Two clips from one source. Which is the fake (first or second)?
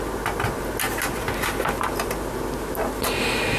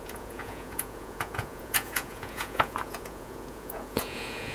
second